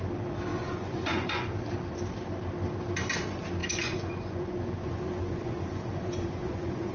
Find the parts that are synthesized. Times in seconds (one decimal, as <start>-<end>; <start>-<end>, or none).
0.5-1.5; 3.6-6.9